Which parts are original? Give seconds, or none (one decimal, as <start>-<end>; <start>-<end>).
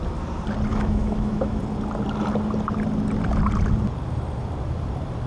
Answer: 0.0-0.7; 1.6-5.3